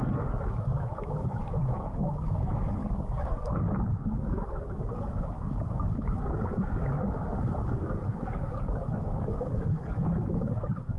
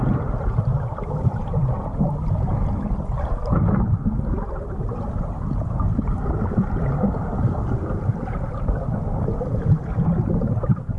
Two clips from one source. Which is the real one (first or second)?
second